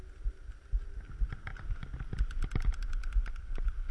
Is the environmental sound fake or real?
real